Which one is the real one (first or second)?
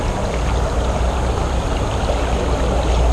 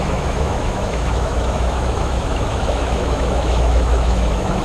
first